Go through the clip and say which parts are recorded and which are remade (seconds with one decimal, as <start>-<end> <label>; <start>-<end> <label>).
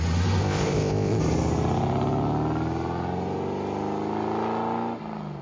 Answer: 0.0-0.4 recorded; 0.4-1.2 remade; 1.2-5.4 recorded